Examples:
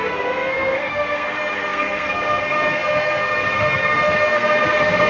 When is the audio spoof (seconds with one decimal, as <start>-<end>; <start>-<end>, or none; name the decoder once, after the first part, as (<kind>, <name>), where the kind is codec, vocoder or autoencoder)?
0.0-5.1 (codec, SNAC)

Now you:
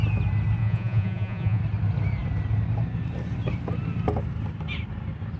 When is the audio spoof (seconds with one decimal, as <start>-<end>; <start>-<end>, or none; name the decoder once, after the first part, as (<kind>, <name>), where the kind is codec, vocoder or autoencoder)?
0.6-1.6 (vocoder, Vocos)

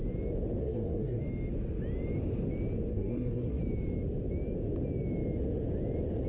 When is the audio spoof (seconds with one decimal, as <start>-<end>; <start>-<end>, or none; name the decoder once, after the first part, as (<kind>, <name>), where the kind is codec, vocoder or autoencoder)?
0.6-1.2 (codec, SNAC); 2.9-3.6